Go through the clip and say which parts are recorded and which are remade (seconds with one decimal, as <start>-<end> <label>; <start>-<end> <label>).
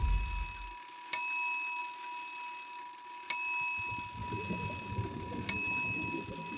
0.0-6.6 recorded